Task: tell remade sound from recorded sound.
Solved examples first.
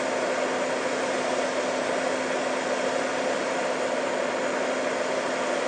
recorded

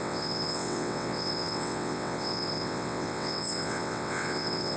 remade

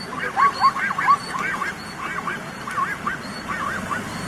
recorded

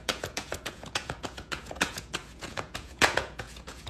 remade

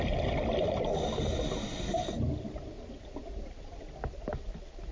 recorded